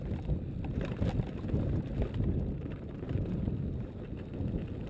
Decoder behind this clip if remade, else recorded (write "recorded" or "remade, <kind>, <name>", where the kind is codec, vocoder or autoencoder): recorded